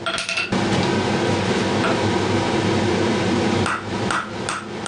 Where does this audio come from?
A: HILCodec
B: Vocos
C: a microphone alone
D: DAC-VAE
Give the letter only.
C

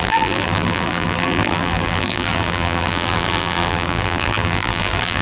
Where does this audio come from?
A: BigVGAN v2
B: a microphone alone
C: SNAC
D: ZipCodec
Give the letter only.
A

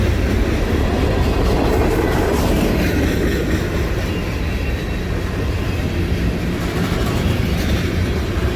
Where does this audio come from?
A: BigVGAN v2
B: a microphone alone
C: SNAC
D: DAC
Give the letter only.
B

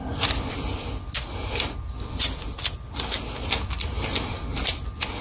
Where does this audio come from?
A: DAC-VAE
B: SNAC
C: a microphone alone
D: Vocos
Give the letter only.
C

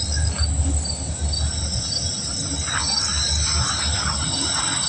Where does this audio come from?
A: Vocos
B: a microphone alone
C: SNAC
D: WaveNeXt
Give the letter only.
B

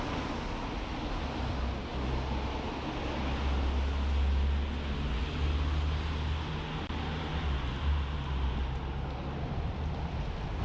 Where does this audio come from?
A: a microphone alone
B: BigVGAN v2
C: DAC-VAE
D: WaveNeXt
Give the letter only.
A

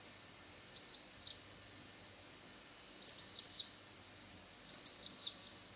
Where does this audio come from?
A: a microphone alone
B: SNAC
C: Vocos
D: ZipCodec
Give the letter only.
A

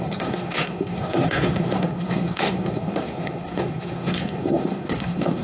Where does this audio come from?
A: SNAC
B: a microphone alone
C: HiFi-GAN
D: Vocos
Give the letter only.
A